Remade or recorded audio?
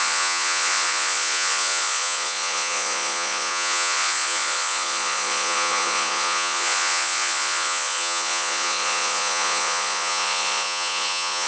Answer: remade